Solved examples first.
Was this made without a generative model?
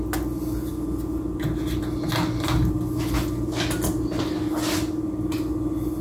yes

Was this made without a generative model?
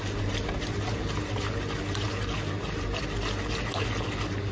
yes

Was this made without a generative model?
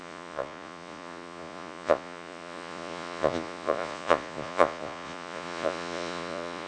no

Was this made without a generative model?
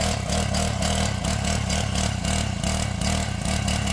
yes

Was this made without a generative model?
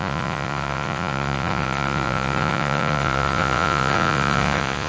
no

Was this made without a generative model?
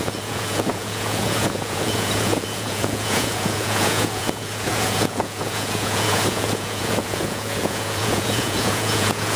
no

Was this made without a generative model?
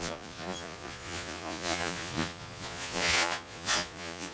no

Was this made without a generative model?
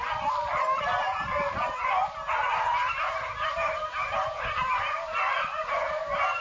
yes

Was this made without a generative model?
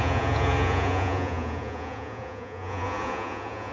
no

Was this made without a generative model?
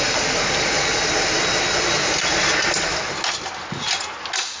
yes